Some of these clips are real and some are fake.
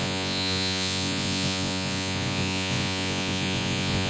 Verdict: fake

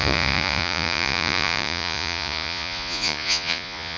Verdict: fake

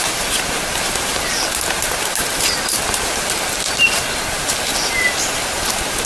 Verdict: real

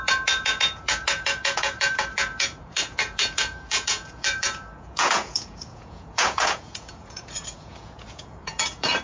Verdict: fake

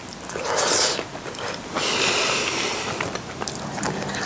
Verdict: real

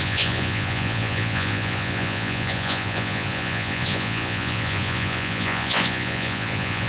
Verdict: fake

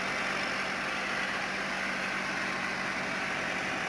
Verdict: real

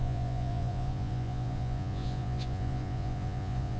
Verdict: fake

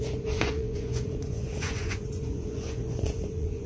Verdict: fake